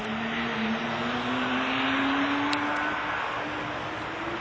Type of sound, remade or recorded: recorded